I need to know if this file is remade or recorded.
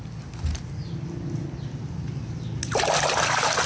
recorded